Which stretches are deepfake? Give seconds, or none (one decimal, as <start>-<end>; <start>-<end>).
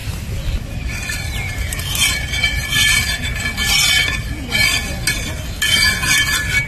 0.0-0.6